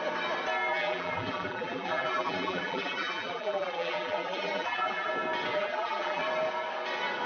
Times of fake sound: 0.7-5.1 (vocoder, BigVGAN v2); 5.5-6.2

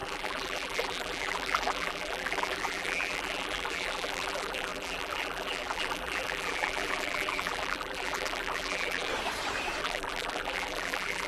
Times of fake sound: 0.0-9.1 (vocoder, BigVGAN v2); 9.8-11.3

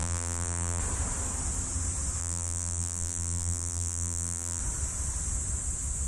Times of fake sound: 0.0-0.8 (vocoder, BigVGAN v2); 2.2-4.6

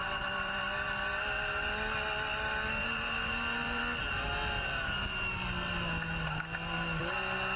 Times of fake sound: 0.0-0.6 (vocoder, BigVGAN v2); 2.8-3.8

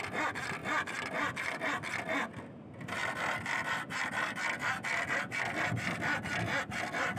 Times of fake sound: none

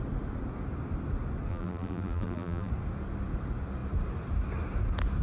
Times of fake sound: 1.5-2.7 (vocoder, BigVGAN v2)